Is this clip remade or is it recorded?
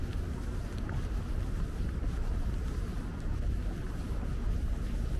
recorded